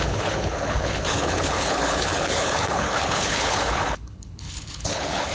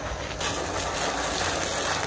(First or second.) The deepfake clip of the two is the first